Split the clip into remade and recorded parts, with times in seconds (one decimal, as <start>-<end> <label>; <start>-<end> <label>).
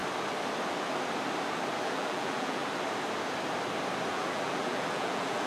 0.0-1.8 recorded; 1.8-2.6 remade; 2.6-4.1 recorded; 4.1-5.5 remade